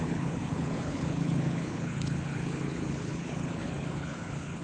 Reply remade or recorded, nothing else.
remade